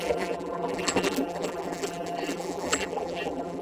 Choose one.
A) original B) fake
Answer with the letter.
B